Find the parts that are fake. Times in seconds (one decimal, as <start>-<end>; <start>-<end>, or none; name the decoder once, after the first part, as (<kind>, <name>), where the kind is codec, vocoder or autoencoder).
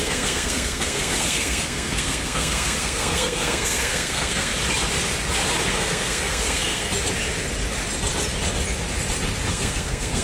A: 0.0-4.5 (codec, SNAC); 5.7-6.9; 9.5-10.2